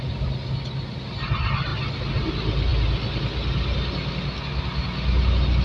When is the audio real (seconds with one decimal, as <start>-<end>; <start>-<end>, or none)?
0.0-5.6